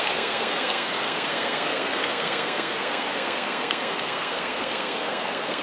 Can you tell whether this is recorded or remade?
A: remade